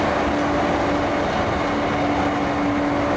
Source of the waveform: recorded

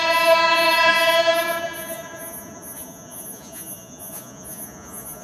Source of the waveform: remade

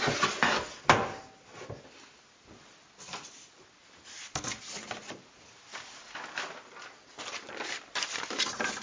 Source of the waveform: recorded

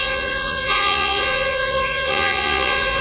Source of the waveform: remade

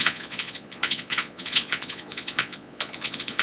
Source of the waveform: remade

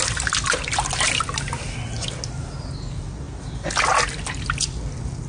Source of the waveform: recorded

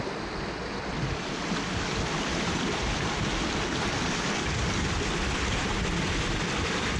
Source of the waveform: recorded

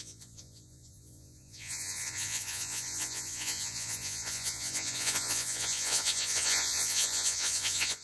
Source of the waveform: remade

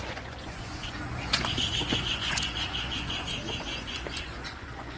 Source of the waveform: remade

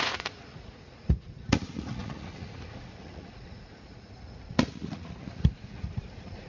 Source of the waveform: remade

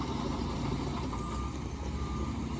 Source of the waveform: recorded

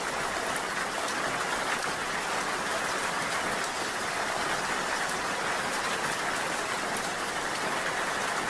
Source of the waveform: recorded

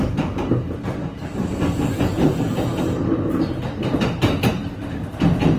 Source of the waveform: recorded